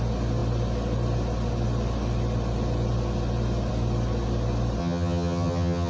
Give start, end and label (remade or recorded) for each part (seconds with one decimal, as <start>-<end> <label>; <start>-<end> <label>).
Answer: 0.0-4.8 recorded; 4.8-5.9 remade